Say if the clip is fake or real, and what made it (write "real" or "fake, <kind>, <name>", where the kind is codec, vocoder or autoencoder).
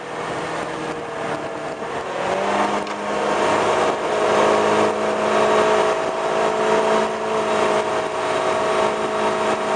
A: real